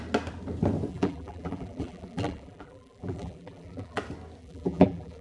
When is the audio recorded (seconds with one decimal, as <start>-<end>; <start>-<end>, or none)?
0.0-0.9; 4.0-4.4